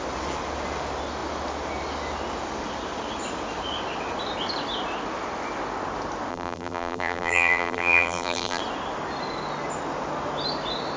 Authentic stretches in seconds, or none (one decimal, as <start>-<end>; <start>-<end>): 0.0-6.3; 8.6-11.0